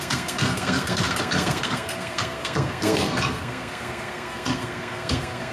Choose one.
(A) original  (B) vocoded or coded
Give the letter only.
B